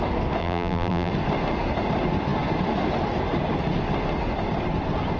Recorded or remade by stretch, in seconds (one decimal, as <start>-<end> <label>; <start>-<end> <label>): 0.0-0.4 recorded; 0.4-1.1 remade; 1.1-5.2 recorded